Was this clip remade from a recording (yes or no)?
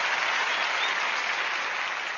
no